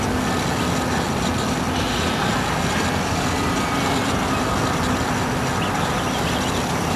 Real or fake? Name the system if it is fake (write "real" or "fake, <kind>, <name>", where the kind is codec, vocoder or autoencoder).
real